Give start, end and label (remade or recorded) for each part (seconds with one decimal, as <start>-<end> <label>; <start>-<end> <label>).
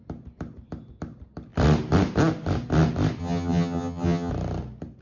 0.0-3.2 recorded; 3.2-4.3 remade; 4.3-5.0 recorded